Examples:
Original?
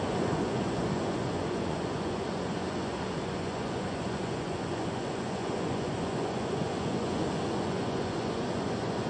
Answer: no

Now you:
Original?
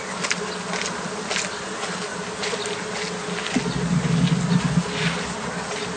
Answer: yes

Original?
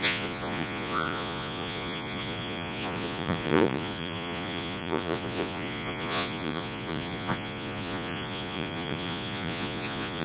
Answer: no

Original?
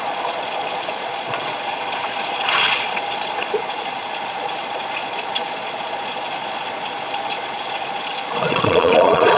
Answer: no